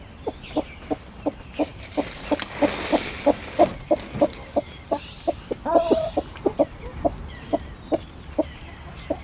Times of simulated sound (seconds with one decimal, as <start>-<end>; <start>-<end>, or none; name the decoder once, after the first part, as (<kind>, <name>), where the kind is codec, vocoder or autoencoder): 1.7-2.6 (vocoder, BigVGAN v2)